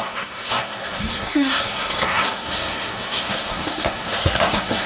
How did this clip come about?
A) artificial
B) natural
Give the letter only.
A